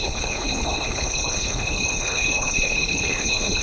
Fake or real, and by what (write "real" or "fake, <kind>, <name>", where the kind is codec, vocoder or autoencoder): fake, codec, HILCodec